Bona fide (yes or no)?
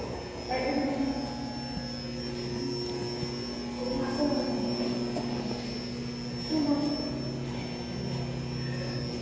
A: yes